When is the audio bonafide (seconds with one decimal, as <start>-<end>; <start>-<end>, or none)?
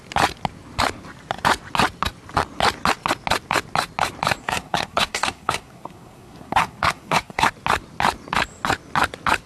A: 0.0-4.4; 7.5-9.5